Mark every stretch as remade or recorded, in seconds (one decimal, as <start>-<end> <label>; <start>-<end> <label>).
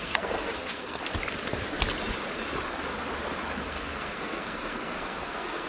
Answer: 0.0-1.0 remade; 1.0-3.6 recorded; 3.6-5.7 remade